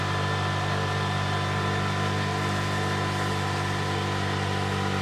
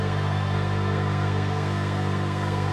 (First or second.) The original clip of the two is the first